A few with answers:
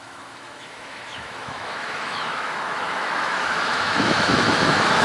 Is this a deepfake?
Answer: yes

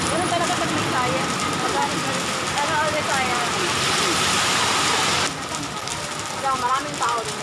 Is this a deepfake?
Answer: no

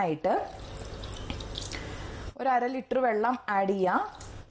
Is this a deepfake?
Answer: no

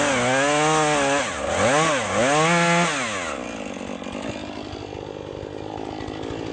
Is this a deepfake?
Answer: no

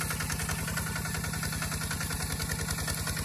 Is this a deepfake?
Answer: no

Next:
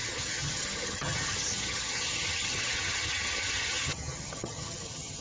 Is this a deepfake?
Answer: yes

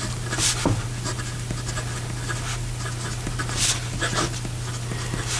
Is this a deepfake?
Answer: no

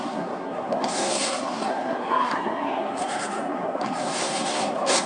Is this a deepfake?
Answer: yes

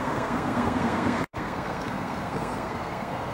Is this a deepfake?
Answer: yes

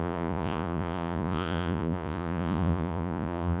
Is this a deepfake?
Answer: yes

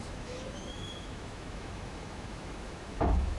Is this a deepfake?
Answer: yes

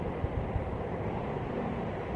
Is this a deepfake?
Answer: yes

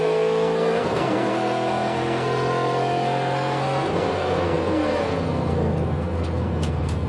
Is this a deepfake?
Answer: yes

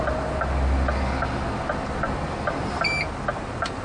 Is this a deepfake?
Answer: no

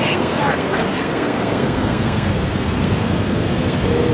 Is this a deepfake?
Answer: yes